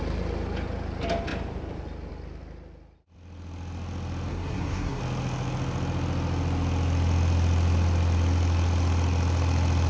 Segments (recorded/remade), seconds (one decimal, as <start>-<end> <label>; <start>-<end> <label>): 0.0-4.3 recorded; 4.3-5.0 remade; 5.0-9.9 recorded